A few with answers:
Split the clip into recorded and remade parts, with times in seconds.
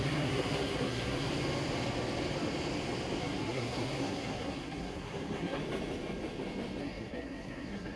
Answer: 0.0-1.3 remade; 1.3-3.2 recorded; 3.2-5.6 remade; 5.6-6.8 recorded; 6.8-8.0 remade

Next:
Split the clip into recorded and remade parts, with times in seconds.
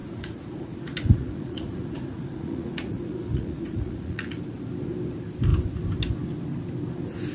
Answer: 0.0-4.4 remade; 4.4-7.3 recorded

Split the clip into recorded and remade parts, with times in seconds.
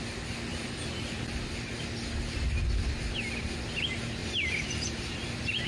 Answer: 0.0-0.5 recorded; 0.5-1.5 remade; 1.5-4.2 recorded; 4.2-5.7 remade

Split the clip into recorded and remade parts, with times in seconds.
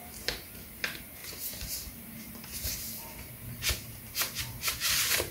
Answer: 0.0-5.3 remade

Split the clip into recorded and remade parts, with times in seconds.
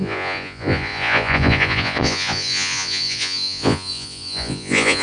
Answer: 0.0-5.0 remade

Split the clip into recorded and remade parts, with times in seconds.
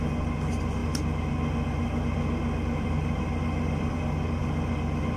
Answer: 0.0-5.2 remade